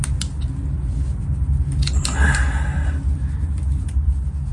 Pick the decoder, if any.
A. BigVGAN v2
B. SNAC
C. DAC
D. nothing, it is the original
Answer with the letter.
D